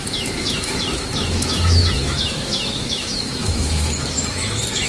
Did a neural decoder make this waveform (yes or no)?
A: yes